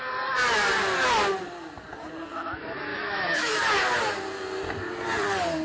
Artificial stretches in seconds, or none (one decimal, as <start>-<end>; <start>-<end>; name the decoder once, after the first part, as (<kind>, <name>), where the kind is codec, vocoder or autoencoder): 2.9-3.6 (autoencoder, DAC-VAE)